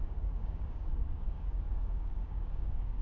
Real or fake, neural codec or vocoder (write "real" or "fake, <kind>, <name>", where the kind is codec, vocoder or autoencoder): fake, codec, DAC